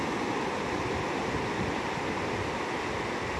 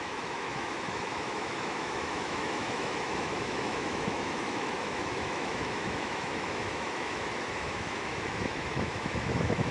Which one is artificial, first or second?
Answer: second